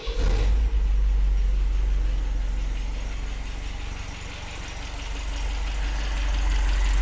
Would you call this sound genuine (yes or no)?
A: yes